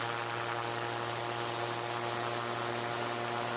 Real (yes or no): yes